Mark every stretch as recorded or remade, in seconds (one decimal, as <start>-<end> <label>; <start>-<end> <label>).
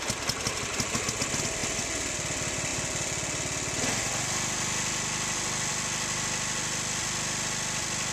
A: 0.0-8.1 recorded